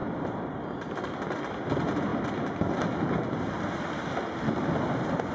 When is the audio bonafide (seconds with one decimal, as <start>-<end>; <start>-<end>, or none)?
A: 1.4-5.3